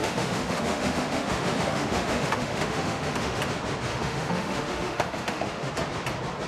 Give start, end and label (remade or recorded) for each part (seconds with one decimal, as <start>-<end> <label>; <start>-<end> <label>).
0.0-3.4 remade; 3.4-3.9 recorded; 3.9-5.7 remade; 5.7-6.5 recorded